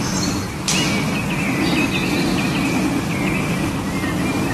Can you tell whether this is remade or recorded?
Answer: recorded